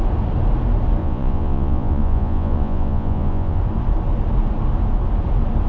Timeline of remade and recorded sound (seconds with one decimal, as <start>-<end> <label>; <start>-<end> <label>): 0.0-1.0 recorded; 1.0-3.6 remade; 3.6-5.7 recorded